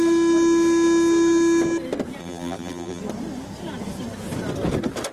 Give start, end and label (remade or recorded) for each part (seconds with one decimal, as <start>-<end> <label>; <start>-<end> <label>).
0.0-2.2 recorded; 2.2-3.0 remade; 3.0-5.1 recorded